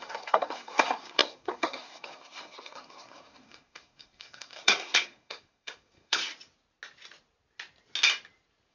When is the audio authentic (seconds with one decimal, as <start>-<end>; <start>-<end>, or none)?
6.2-8.7